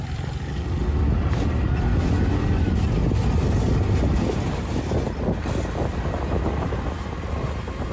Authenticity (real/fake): real